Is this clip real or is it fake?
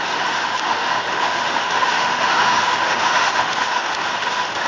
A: fake